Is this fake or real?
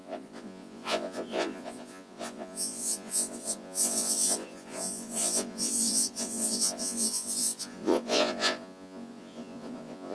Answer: fake